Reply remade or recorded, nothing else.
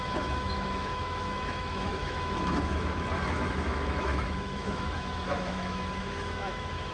remade